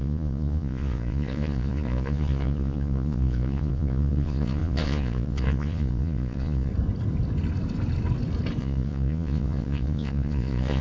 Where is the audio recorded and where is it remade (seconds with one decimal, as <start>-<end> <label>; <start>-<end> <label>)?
0.0-6.7 remade; 6.7-8.6 recorded; 8.6-10.8 remade